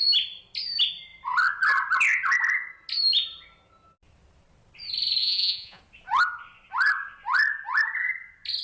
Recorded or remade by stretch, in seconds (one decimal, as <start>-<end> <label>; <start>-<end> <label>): 0.0-5.2 recorded; 5.2-5.8 remade; 5.8-8.6 recorded

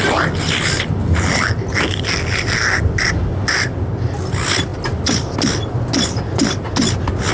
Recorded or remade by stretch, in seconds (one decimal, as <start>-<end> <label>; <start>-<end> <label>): 0.0-7.3 recorded